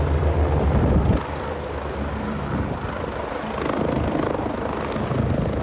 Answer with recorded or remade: recorded